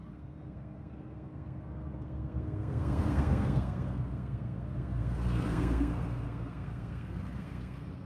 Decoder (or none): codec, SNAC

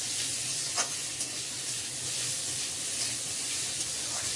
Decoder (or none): vocoder, Vocos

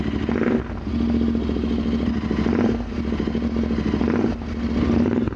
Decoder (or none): none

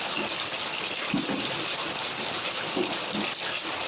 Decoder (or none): none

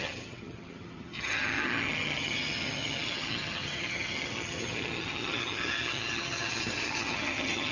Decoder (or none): vocoder, HiFi-GAN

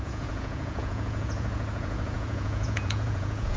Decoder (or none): vocoder, Vocos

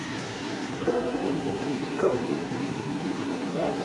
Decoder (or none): codec, SNAC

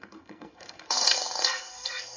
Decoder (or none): codec, SNAC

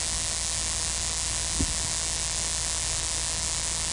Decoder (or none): none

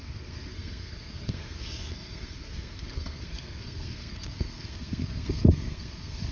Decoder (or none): codec, SNAC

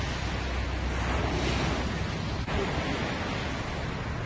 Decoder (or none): none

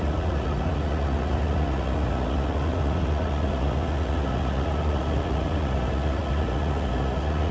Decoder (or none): vocoder, Vocos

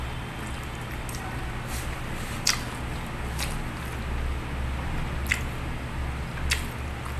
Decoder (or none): none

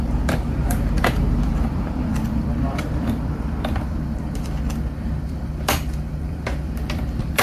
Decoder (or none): vocoder, BigVGAN v2